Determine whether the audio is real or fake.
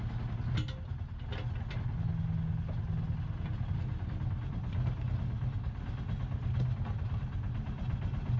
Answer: real